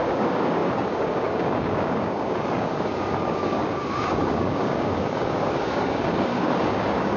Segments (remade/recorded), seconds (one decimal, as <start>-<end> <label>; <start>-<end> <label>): 0.0-7.2 remade